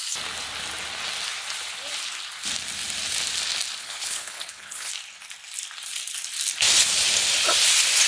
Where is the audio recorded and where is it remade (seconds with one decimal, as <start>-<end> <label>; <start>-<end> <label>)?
0.0-3.8 recorded; 3.8-4.9 remade; 4.9-8.1 recorded

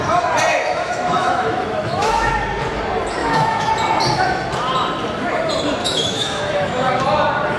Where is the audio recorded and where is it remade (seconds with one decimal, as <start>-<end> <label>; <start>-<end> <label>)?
0.0-0.5 recorded; 0.5-2.3 remade; 2.3-3.2 recorded; 3.2-3.7 remade; 3.7-5.8 recorded; 5.8-7.0 remade; 7.0-7.6 recorded

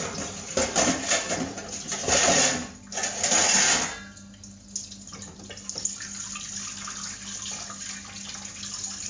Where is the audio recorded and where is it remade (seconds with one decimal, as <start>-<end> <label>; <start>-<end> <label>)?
0.0-9.1 recorded